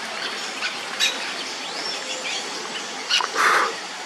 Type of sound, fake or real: real